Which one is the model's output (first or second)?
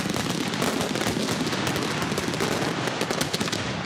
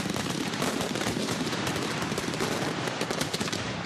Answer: second